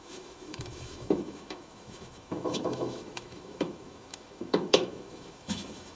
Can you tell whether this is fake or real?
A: fake